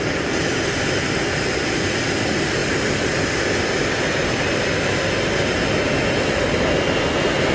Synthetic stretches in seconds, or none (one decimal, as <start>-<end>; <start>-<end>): none